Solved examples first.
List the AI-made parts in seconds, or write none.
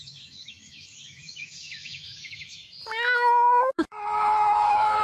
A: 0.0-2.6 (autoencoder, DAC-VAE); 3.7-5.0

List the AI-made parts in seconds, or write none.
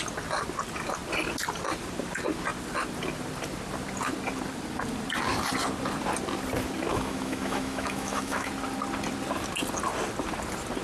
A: 6.9-8.5 (autoencoder, DAC-VAE)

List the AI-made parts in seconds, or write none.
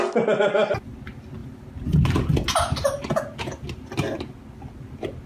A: none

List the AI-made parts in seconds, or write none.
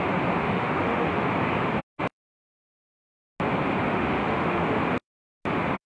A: 0.4-1.3 (autoencoder, DAC-VAE); 3.9-4.7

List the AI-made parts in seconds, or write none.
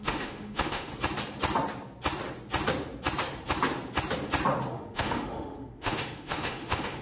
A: 0.0-0.9 (autoencoder, DAC-VAE); 4.7-7.0